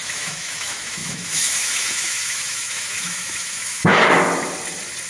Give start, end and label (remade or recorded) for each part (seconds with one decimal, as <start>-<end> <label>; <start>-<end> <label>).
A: 0.0-3.9 remade; 3.9-5.1 recorded